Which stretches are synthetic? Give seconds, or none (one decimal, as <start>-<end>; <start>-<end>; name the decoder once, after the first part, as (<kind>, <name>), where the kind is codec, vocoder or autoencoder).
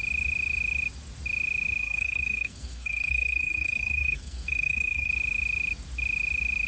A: 1.8-5.1 (codec, SNAC)